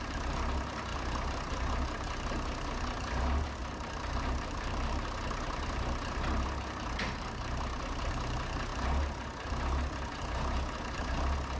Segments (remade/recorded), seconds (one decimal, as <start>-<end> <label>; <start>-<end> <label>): 0.0-3.6 recorded; 3.6-8.1 remade; 8.1-11.6 recorded